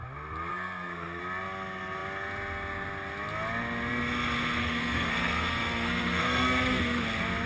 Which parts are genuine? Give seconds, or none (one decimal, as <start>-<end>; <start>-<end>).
0.0-0.5; 1.2-4.6; 7.0-7.5

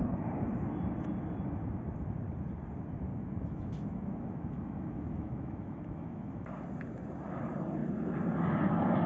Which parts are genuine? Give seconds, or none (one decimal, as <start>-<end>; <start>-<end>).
0.0-3.1; 6.5-9.1

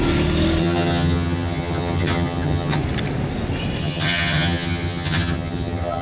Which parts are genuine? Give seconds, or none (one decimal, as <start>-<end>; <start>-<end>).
0.0-0.6; 2.8-3.8

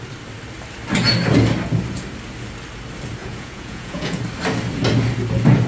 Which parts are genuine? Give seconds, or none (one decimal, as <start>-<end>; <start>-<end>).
0.0-3.2; 4.2-5.7

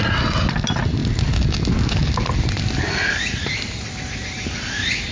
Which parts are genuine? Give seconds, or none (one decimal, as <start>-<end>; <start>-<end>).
0.0-5.1

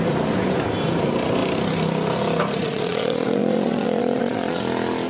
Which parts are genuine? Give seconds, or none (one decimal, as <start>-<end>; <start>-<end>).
0.0-2.6; 4.6-5.1